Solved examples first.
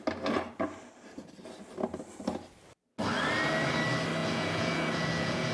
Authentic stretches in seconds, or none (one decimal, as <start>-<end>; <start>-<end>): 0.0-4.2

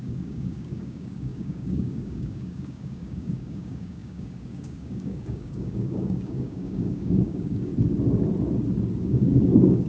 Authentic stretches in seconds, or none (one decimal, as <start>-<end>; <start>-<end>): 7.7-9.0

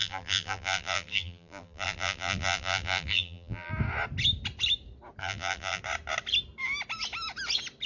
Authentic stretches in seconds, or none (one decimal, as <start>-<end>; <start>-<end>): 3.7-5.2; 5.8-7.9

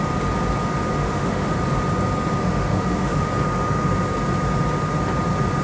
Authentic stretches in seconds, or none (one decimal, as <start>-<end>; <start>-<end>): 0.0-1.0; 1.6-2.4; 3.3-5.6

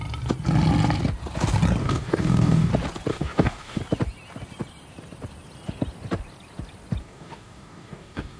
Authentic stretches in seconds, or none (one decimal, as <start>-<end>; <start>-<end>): 0.0-1.8; 2.7-3.1; 3.8-7.0